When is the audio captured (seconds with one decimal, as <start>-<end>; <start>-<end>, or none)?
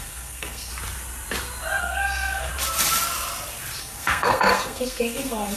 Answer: 0.7-1.8; 2.5-3.8